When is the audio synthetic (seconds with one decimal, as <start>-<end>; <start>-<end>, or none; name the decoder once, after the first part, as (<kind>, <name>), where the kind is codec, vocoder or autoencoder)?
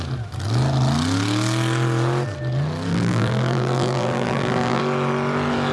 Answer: 2.9-4.8 (vocoder, BigVGAN v2)